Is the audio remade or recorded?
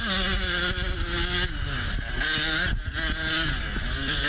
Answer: recorded